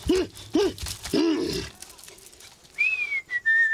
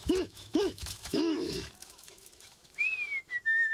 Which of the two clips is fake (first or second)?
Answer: second